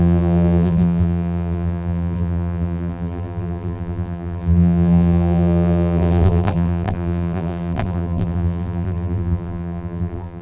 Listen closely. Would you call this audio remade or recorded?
remade